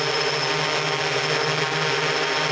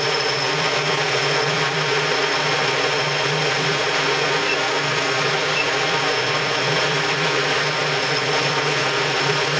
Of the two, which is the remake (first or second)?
second